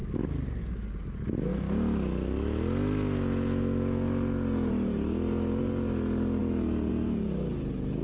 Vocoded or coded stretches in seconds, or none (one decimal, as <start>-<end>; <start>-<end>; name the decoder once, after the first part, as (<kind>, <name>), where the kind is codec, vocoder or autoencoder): none